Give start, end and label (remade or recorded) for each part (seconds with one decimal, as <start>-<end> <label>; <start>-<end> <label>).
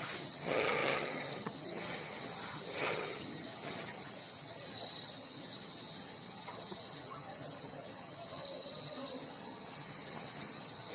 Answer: 0.0-10.9 remade